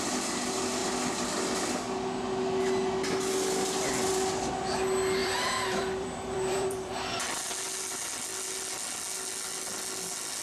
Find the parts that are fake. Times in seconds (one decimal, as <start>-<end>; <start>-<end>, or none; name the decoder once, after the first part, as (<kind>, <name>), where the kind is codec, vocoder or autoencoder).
5.2-6.9 (vocoder, BigVGAN v2)